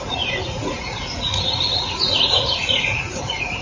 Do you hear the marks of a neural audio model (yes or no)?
yes